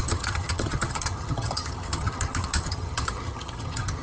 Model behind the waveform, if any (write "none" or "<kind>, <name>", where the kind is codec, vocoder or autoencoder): vocoder, HiFi-GAN